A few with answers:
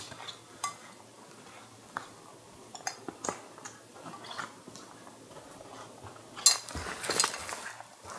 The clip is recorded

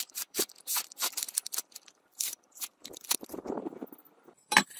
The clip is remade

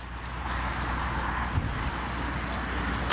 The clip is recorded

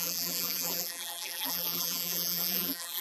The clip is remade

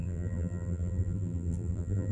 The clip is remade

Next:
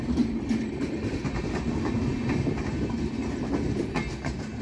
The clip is recorded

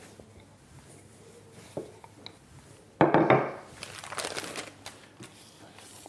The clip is recorded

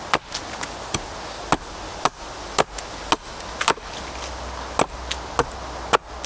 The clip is recorded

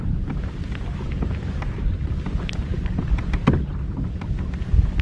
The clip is recorded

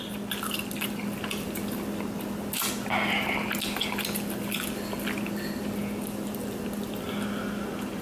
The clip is recorded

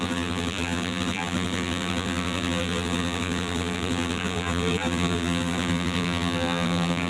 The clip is remade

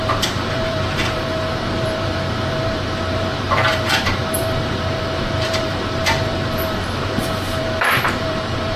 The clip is remade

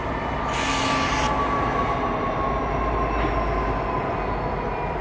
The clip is recorded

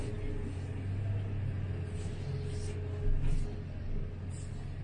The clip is recorded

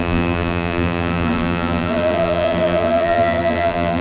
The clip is remade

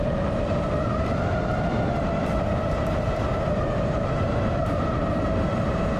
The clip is remade